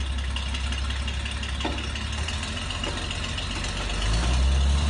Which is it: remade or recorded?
recorded